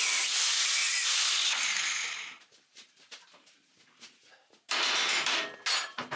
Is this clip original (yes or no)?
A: yes